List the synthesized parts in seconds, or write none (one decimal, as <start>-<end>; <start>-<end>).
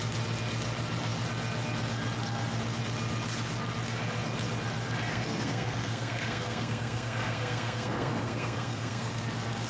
5.1-9.1